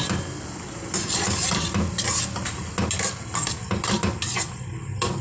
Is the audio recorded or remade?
recorded